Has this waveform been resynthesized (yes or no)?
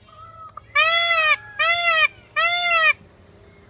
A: no